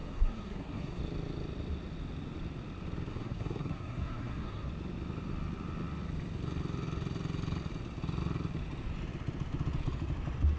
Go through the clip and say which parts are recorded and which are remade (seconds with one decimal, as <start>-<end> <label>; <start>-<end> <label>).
0.0-1.0 remade; 1.0-3.1 recorded; 3.1-4.7 remade; 4.7-10.6 recorded